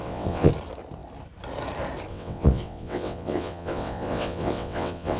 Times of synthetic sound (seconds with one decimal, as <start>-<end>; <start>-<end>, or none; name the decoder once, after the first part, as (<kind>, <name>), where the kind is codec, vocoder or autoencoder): 0.0-0.5 (vocoder, WaveNeXt); 2.1-5.2